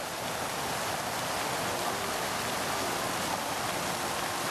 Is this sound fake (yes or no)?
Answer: no